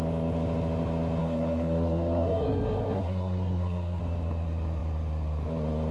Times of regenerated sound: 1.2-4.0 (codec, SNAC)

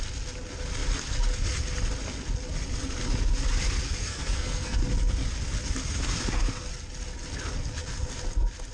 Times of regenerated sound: 4.0-4.8 (codec, SNAC)

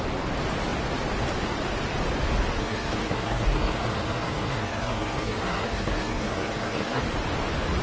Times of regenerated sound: 2.6-7.0 (codec, SNAC)

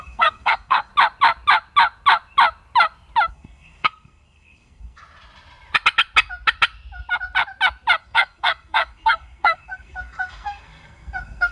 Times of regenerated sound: 0.0-0.9 (codec, SNAC); 3.3-5.0; 8.0-11.5

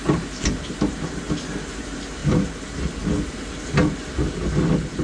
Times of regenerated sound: none

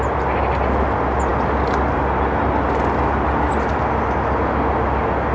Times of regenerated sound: none

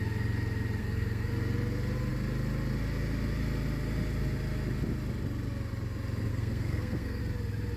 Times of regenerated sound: 0.8-1.3 (codec, SNAC); 6.3-7.2